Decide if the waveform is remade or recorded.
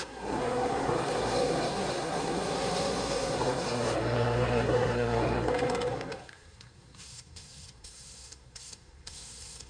remade